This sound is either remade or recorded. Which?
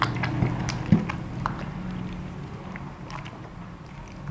recorded